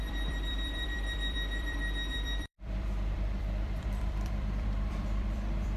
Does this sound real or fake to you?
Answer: fake